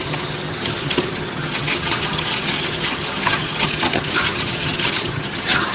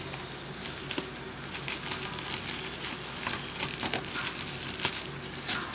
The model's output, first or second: first